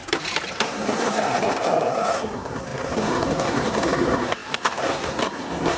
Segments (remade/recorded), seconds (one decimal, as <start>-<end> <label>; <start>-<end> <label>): 0.0-0.5 recorded; 0.5-5.8 remade